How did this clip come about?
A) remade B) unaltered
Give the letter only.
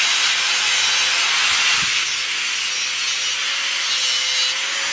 B